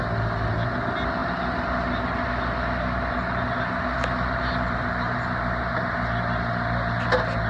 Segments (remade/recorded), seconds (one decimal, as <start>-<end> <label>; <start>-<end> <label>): 0.0-7.5 recorded